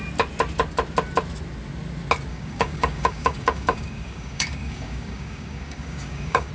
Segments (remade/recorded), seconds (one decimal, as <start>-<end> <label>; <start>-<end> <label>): 0.0-2.3 recorded; 2.3-6.5 remade